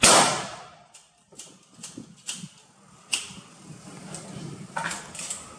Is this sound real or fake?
real